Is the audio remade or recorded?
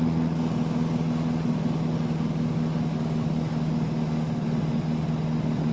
recorded